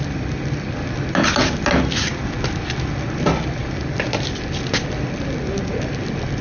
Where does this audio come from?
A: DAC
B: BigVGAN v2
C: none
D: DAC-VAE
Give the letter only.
C